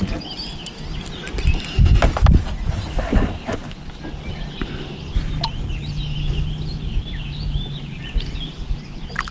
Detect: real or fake real